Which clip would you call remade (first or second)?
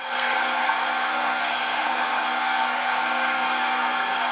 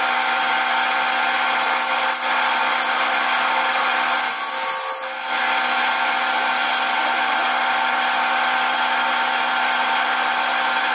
first